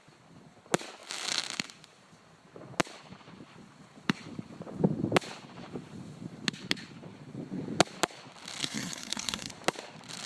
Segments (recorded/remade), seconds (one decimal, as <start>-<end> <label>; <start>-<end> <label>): 0.0-8.6 recorded; 8.6-9.5 remade; 9.5-10.3 recorded